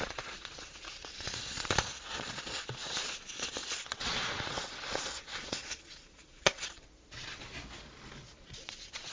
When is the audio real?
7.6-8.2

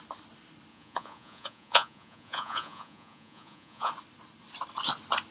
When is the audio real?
0.0-0.7; 3.9-5.3

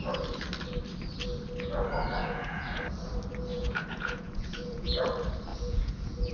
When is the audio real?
0.0-2.2; 2.8-3.5; 5.0-5.5

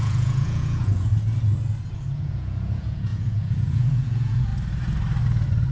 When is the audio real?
1.1-1.9; 4.5-5.7

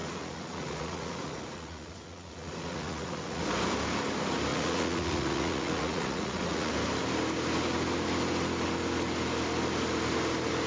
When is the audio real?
3.4-4.5; 6.7-10.7

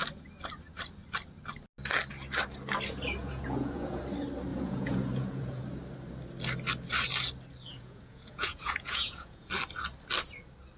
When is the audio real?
0.0-3.2; 4.0-4.5; 5.6-7.7; 9.5-10.8